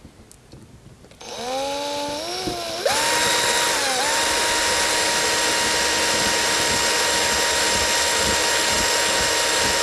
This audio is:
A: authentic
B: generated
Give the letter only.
A